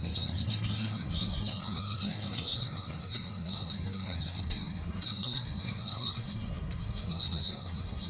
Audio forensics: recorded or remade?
remade